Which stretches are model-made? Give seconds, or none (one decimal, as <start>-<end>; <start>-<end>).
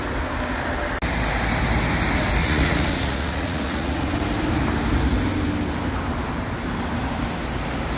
2.4-4.1